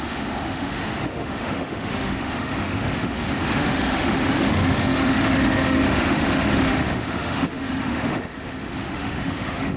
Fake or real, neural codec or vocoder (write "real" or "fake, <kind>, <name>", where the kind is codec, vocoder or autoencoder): fake, autoencoder, DAC-VAE